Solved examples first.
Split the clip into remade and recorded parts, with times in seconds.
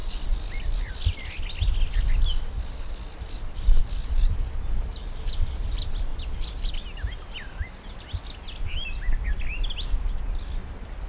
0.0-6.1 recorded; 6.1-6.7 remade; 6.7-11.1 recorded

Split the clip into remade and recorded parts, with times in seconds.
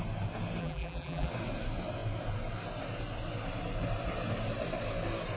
0.0-0.6 recorded; 0.6-1.3 remade; 1.3-5.4 recorded